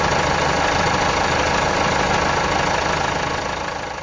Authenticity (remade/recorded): recorded